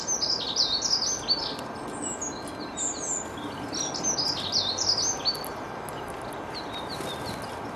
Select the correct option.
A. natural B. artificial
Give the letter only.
A